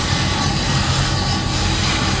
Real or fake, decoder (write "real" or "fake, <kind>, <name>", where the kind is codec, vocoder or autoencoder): real